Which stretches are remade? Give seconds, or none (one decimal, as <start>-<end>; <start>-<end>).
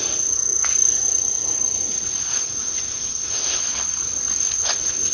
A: 2.3-3.6